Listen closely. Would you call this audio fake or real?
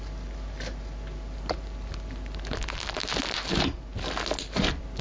real